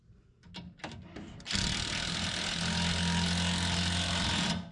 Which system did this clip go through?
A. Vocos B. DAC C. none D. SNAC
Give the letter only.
C